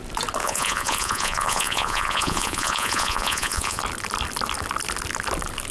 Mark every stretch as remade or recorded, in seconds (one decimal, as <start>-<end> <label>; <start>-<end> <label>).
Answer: 0.0-0.4 recorded; 0.4-3.8 remade; 3.8-5.7 recorded